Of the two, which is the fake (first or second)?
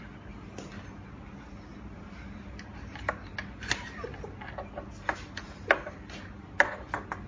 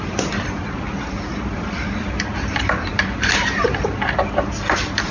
second